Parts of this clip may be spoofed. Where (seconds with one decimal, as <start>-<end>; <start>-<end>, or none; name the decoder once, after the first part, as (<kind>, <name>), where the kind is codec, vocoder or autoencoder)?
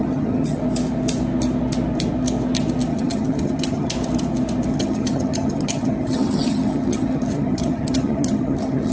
0.0-0.6 (vocoder, HiFi-GAN); 2.9-3.9; 4.7-8.9